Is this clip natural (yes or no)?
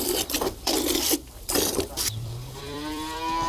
no